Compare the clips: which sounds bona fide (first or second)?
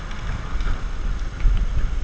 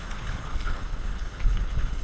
first